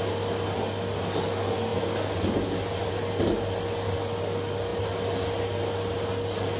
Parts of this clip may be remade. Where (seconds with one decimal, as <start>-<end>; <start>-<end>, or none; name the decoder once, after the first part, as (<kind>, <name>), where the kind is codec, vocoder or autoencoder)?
none